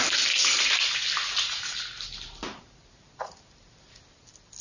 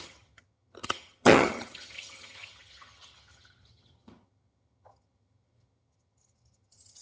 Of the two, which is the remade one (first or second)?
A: second